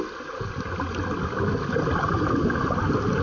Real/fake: real